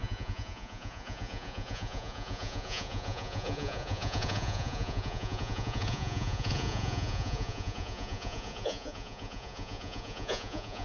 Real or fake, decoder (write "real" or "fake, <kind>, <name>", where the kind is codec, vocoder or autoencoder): fake, vocoder, Vocos